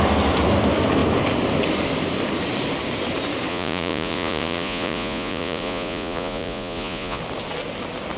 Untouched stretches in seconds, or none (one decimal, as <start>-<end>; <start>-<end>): 0.0-3.5; 7.2-8.2